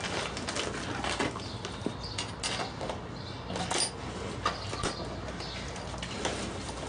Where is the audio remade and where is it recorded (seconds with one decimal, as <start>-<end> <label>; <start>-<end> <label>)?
0.0-6.9 recorded